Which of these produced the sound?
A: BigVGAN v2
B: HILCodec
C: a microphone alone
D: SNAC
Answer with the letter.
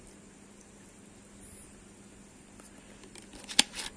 C